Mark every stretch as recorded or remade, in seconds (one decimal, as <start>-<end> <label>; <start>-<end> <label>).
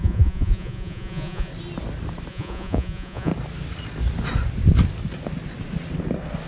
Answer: 0.0-1.5 remade; 1.5-2.3 recorded; 2.3-3.3 remade; 3.3-6.5 recorded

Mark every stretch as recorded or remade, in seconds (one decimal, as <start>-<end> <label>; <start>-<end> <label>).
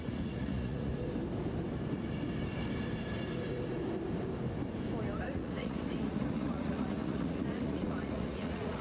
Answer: 0.0-0.9 remade; 0.9-5.2 recorded; 5.2-8.8 remade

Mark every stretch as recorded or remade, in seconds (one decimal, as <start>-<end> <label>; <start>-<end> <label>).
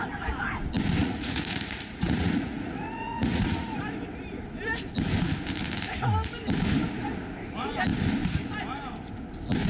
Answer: 0.0-1.0 recorded; 1.0-3.8 remade; 3.8-9.7 recorded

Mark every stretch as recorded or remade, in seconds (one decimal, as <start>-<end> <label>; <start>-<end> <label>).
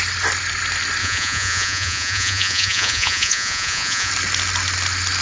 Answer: 0.0-1.0 recorded; 1.0-4.1 remade; 4.1-5.2 recorded